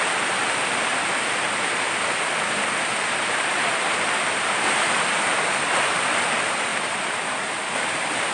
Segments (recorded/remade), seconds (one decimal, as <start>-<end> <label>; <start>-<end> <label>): 0.0-0.9 recorded; 0.9-1.7 remade; 1.7-2.9 recorded; 2.9-5.6 remade; 5.6-6.7 recorded; 6.7-7.5 remade; 7.5-8.3 recorded